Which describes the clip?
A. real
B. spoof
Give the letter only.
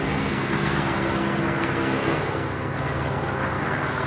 B